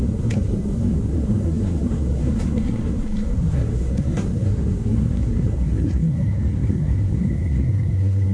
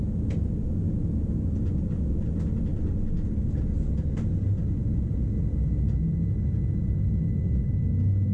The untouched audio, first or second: second